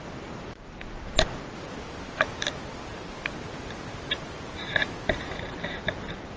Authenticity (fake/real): real